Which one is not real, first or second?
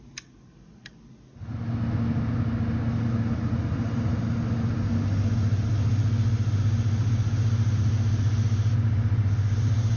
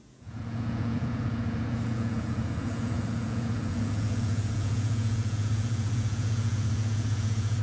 second